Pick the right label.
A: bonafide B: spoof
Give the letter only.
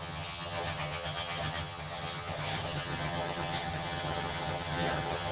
B